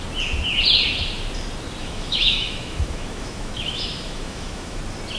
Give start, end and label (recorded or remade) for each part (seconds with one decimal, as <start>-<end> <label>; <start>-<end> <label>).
0.0-1.8 recorded; 1.8-4.8 remade; 4.8-5.2 recorded